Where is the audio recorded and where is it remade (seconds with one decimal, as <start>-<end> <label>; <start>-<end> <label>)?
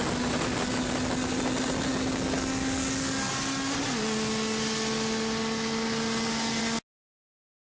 0.0-7.8 recorded